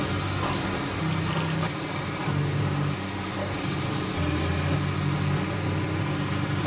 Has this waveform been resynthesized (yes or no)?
no